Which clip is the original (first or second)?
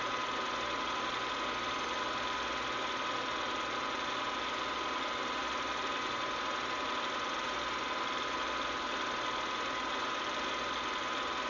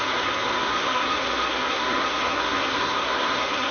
first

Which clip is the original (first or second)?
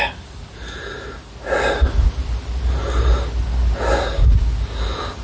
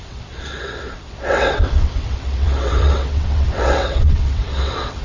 first